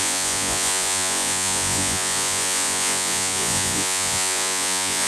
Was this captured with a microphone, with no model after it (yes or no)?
no